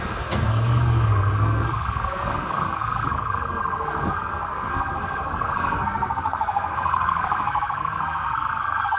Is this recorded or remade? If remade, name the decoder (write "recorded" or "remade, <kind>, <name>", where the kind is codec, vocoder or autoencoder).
remade, codec, SNAC